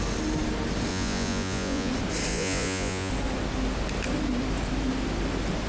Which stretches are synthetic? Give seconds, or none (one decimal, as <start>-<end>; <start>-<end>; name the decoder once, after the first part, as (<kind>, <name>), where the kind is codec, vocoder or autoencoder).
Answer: 0.9-1.9 (vocoder, Vocos); 2.3-3.1